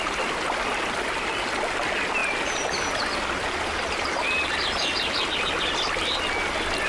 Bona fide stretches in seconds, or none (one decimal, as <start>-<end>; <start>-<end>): 0.0-6.9